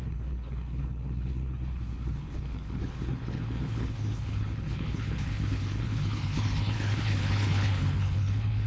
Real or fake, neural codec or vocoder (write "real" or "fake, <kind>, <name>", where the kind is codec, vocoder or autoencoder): fake, codec, HILCodec